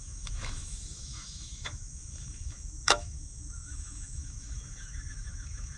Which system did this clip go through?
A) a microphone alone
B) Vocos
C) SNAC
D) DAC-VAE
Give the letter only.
D